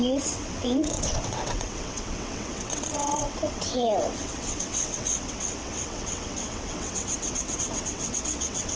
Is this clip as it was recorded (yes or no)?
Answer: no